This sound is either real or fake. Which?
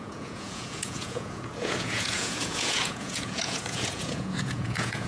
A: fake